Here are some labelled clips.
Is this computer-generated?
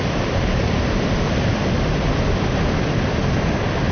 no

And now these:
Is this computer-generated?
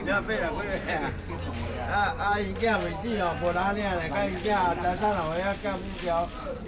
no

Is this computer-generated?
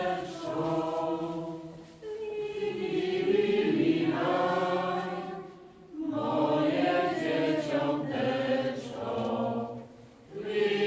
no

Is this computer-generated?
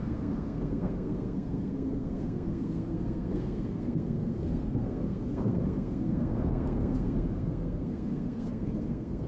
yes